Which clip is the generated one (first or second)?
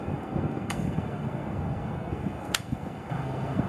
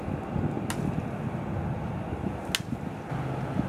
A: first